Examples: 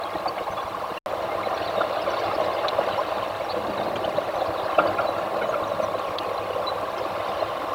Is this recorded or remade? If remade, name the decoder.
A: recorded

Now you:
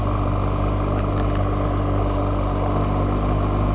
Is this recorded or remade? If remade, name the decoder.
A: recorded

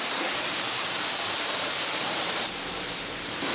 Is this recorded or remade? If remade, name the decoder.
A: remade, vocoder, BigVGAN v2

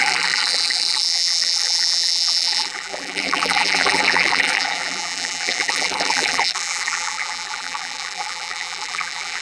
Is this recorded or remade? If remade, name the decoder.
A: remade, vocoder, BigVGAN v2